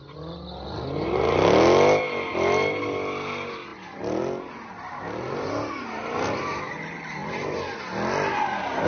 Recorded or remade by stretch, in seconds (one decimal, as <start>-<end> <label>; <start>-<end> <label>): 0.0-8.9 recorded